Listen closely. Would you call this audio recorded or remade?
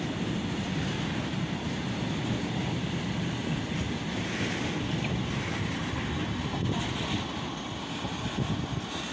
recorded